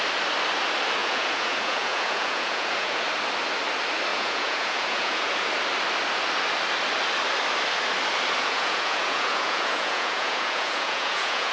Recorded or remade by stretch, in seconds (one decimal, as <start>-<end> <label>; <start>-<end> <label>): 0.0-1.0 recorded; 1.0-3.0 remade; 3.0-4.1 recorded; 4.1-5.5 remade; 5.5-8.4 recorded; 8.4-11.5 remade